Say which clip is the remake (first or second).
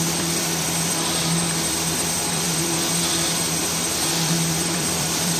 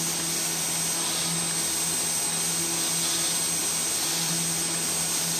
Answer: first